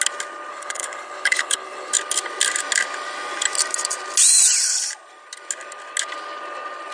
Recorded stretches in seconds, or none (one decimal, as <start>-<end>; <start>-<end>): 0.0-0.5; 1.9-6.9